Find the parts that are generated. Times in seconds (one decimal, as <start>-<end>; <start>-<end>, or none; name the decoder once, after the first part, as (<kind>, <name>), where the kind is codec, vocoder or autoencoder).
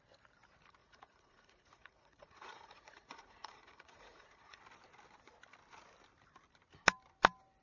0.8-4.6 (vocoder, Vocos)